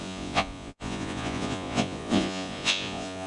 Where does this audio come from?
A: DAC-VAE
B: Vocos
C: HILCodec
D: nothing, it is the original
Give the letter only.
B